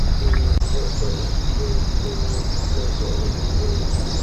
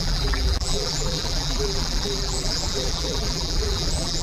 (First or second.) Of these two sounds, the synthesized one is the second